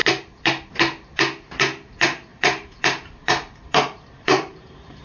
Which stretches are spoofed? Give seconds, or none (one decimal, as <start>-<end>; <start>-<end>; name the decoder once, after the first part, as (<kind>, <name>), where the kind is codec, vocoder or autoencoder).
2.3-5.0 (vocoder, BigVGAN v2)